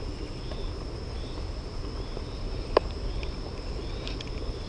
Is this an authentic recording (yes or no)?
yes